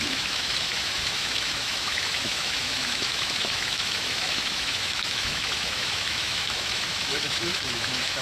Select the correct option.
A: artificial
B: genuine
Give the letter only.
A